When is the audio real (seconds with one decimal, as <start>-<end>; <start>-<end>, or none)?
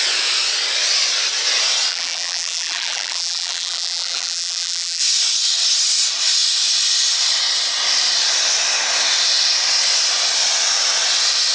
0.0-1.9; 5.0-11.5